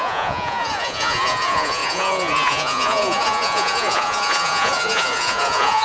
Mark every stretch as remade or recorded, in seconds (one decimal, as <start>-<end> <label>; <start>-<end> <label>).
0.0-5.8 remade